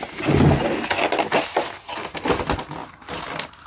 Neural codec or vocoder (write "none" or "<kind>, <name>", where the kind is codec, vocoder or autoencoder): none